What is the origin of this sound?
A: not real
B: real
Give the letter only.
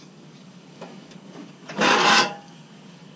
A